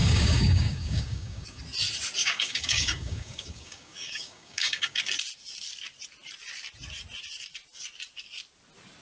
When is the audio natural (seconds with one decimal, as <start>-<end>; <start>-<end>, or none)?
1.6-2.2; 5.0-9.0